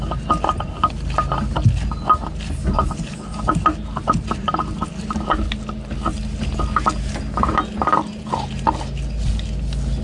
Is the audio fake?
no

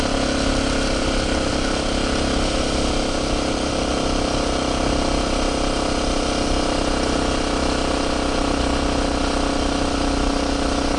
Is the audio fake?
no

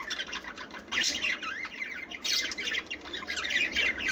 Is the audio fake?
yes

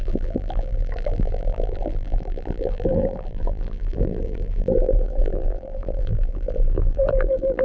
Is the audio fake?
yes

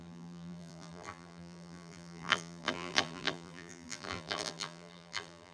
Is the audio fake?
yes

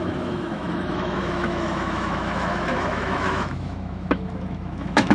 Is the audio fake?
yes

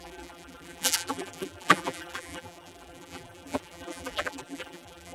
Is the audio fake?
yes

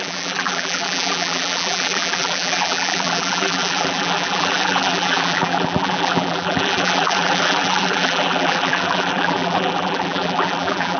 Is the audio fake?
yes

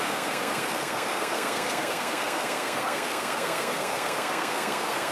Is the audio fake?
yes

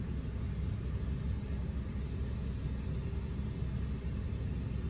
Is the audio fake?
no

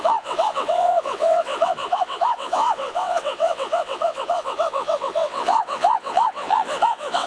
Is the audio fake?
yes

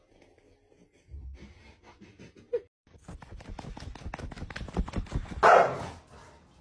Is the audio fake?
no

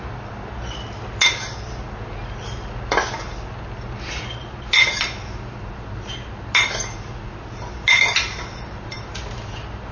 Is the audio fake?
no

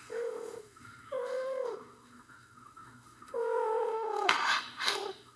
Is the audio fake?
yes